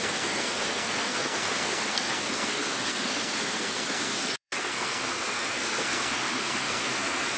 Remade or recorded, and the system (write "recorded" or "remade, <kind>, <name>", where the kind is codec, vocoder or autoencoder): remade, codec, SNAC